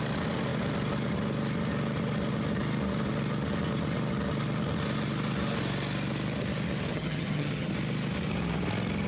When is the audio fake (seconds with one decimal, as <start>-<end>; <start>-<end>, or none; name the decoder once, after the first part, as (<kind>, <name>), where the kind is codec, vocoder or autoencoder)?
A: 6.9-7.7 (vocoder, HiFi-GAN)